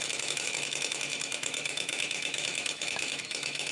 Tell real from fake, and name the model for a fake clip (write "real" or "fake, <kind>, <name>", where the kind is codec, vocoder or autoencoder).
fake, autoencoder, DAC-VAE